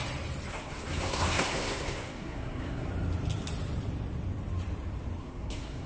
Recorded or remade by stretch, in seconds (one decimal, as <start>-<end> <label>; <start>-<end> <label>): 0.0-0.5 recorded; 0.5-2.9 remade; 2.9-5.2 recorded; 5.2-5.9 remade